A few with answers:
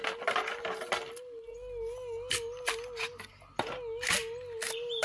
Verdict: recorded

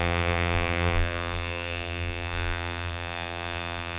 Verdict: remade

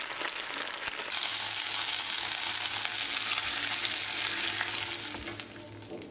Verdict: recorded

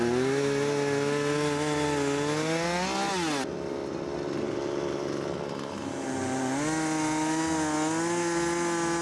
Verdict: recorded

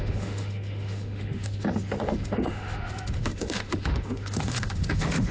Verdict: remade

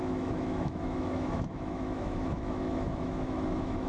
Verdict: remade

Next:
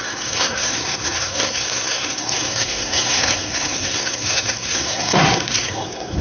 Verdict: remade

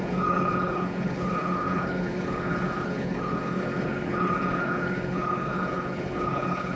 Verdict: remade